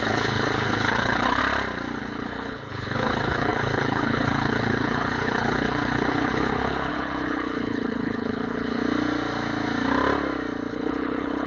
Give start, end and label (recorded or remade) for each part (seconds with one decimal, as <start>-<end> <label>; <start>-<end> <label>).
0.0-1.4 remade; 1.4-2.0 recorded; 2.0-8.8 remade; 8.8-10.7 recorded; 10.7-11.5 remade